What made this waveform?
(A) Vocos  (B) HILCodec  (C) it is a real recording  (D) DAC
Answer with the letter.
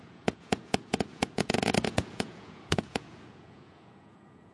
A